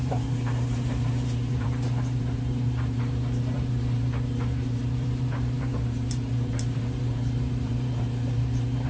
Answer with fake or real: fake